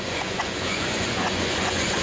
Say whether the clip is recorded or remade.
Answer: remade